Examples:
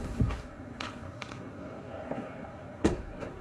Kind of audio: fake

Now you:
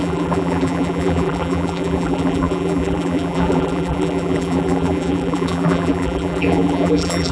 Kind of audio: fake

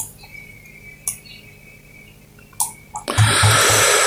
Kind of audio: real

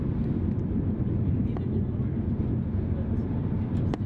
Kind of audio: real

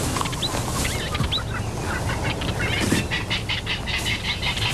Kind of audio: real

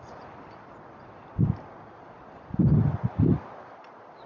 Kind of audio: fake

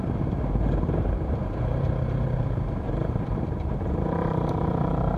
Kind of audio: fake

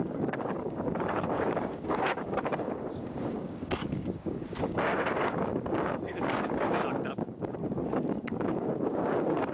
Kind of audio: fake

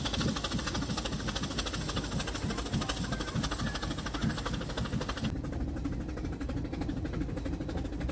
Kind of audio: real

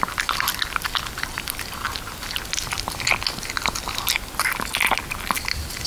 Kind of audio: real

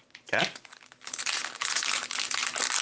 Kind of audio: fake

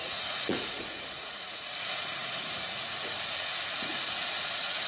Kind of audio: fake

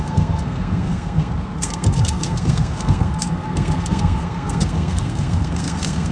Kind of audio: fake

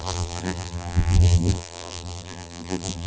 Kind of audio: fake